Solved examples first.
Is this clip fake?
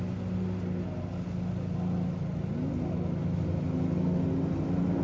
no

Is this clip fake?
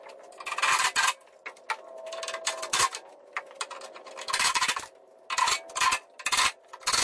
no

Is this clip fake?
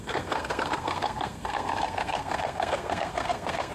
yes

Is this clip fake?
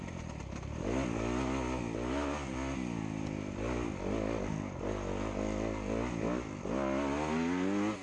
no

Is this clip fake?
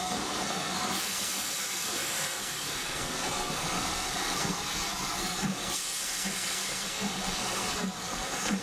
yes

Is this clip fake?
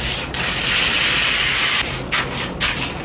no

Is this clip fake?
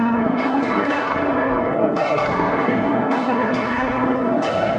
yes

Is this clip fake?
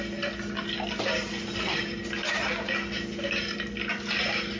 no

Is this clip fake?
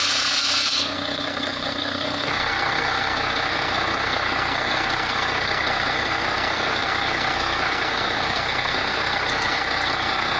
yes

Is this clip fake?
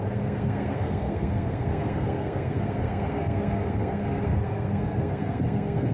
yes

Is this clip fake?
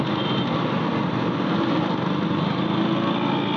no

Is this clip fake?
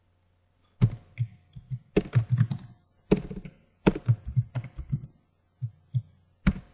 no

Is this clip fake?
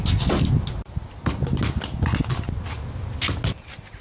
no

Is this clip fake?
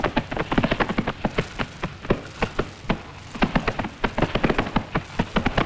no